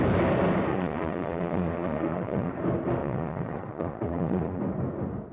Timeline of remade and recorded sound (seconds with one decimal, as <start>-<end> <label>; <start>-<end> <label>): 0.0-0.7 recorded; 0.7-2.5 remade; 2.5-3.0 recorded; 3.0-4.6 remade; 4.6-5.3 recorded